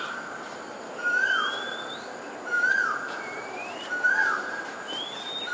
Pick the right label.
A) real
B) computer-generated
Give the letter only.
B